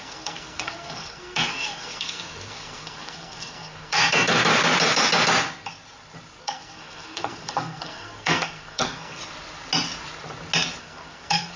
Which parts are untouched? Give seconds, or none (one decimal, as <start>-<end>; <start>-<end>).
4.5-6.4; 9.2-10.8